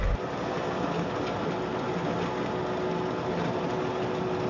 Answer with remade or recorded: recorded